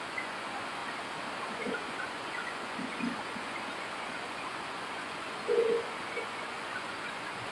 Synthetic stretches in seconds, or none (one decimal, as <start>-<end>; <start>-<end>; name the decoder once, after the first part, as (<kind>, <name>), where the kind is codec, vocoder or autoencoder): 0.0-0.8 (vocoder, Vocos); 1.5-7.5

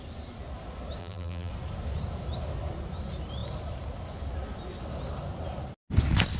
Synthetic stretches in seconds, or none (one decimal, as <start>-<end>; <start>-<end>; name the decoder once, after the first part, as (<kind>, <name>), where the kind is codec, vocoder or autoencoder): 1.0-1.5 (vocoder, BigVGAN v2)

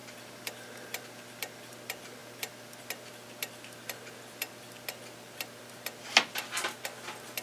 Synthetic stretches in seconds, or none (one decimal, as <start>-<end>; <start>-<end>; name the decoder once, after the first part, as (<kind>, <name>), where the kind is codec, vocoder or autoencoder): 0.0-1.0 (vocoder, BigVGAN v2)

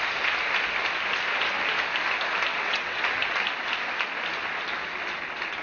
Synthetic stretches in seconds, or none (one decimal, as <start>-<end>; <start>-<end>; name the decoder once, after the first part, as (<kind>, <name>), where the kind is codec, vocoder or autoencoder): 2.5-3.0 (vocoder, WaveNeXt)

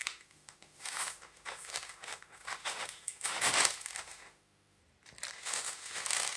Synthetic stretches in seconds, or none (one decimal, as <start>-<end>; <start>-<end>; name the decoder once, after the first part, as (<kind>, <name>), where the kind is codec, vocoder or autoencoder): 0.0-4.8 (autoencoder, DAC-VAE); 5.3-6.4

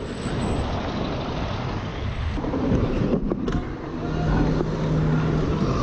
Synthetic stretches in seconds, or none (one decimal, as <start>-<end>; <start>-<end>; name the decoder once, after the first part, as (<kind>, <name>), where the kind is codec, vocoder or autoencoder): none